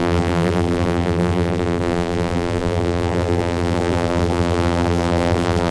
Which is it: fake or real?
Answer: fake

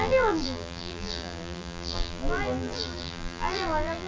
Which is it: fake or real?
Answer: fake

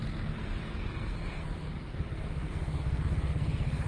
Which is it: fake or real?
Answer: fake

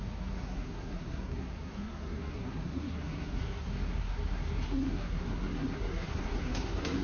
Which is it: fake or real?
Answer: fake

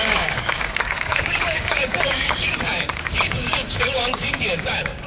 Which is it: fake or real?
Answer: fake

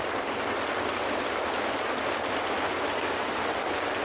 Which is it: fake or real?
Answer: real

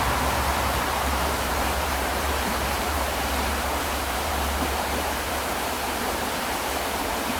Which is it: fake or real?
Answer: fake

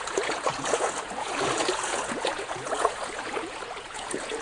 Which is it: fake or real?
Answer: fake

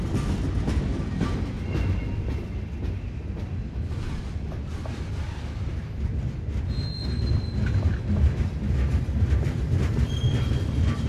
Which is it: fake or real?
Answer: real